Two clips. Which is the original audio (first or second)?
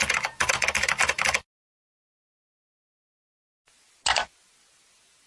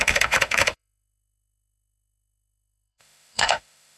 first